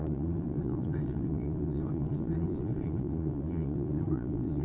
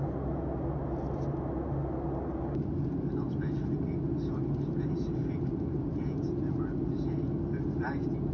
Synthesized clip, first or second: first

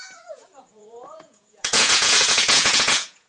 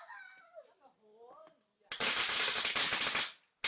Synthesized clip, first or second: first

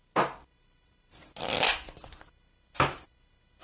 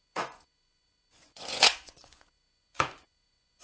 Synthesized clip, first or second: second